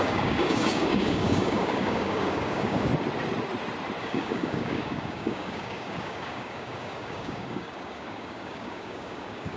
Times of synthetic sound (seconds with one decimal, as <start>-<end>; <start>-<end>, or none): 0.0-2.9; 4.0-9.6